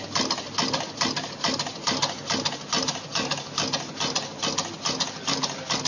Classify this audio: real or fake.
real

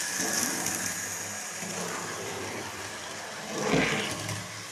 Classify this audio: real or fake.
real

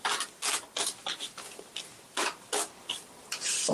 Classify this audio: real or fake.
real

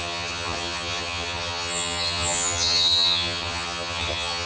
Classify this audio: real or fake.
fake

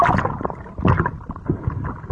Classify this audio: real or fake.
real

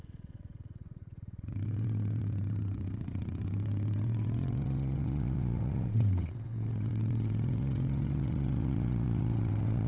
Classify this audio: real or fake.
fake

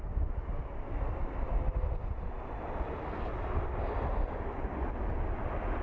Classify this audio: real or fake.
real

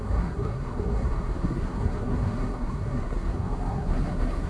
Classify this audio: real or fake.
fake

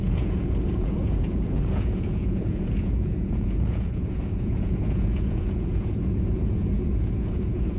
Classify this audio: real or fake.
fake